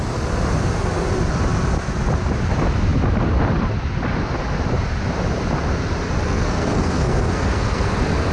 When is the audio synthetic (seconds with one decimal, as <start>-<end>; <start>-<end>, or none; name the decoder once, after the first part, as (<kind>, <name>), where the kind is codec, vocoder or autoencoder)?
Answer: 6.2-7.9 (codec, SNAC)